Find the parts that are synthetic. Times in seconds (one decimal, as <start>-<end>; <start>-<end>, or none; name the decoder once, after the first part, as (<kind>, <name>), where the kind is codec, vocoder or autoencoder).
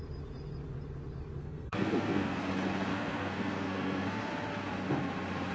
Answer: 1.4-2.4 (codec, SNAC); 2.9-4.3